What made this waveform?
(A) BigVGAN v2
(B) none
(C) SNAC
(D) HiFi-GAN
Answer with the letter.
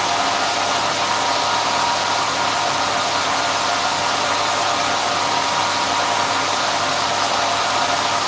B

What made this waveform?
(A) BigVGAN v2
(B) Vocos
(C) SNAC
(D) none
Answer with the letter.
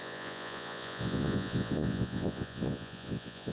B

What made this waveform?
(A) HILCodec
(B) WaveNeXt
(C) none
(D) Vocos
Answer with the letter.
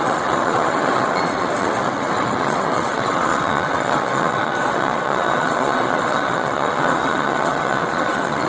B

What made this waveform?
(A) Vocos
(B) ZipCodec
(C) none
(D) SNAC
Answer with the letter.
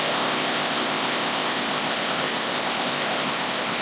B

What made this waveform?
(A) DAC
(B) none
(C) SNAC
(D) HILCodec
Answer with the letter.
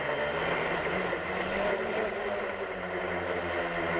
B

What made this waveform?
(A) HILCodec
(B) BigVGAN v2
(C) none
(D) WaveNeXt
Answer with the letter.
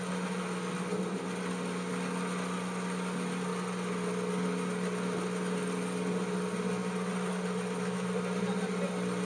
C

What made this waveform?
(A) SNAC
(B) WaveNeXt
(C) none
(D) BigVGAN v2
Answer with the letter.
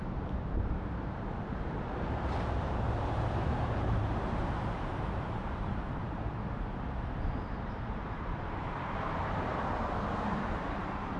D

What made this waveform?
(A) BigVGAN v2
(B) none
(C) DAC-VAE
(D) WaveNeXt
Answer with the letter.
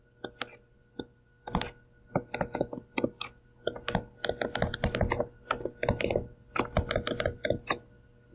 B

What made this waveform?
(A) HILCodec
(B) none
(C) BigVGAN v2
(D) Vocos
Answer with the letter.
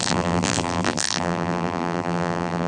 C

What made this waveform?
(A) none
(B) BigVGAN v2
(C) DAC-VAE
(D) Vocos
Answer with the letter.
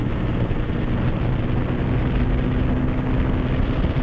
A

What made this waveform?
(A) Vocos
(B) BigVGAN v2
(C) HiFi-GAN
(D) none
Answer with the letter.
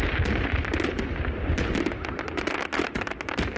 D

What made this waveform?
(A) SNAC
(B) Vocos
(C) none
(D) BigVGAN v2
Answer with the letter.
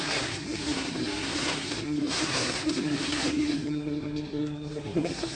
A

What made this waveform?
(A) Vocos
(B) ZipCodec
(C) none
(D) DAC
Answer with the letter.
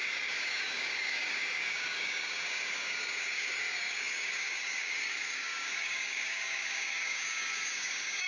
D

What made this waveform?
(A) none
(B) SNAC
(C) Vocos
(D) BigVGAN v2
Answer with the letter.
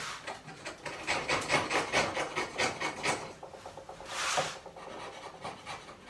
A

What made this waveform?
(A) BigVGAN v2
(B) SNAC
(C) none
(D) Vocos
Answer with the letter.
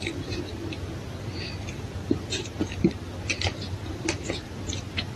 C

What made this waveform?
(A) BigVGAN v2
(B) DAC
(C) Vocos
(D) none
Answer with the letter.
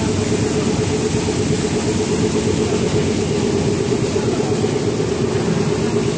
D